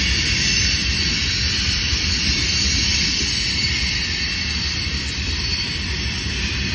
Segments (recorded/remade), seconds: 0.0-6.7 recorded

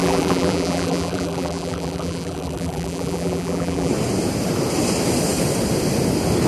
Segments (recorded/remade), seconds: 0.0-3.9 remade; 3.9-6.5 recorded

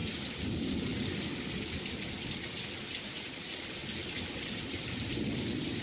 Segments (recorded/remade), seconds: 0.0-0.5 recorded; 0.5-0.9 remade; 0.9-2.7 recorded; 2.7-3.8 remade; 3.8-4.5 recorded; 4.5-5.8 remade

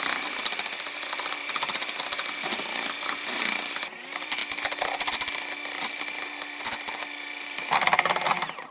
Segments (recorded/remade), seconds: 0.0-4.4 remade; 4.4-7.0 recorded; 7.0-8.7 remade